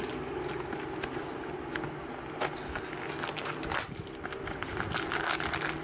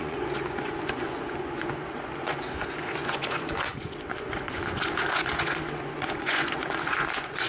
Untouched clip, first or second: first